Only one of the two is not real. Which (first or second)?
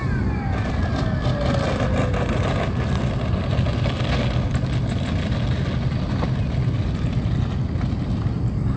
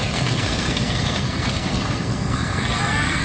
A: second